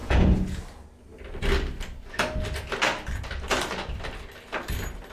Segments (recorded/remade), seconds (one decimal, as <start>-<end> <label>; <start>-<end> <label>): 0.0-0.6 remade; 0.6-5.1 recorded